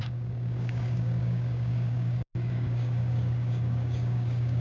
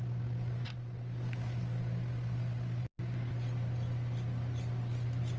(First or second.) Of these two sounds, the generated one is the first